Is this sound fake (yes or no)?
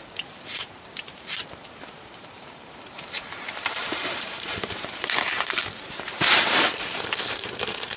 yes